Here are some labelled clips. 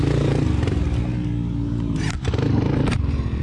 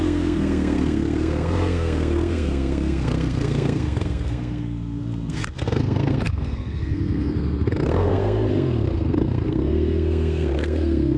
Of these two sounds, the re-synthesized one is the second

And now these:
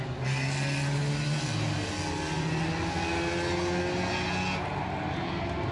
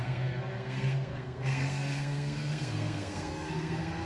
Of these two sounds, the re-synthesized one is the second